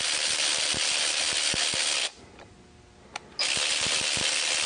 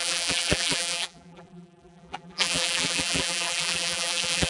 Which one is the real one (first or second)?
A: first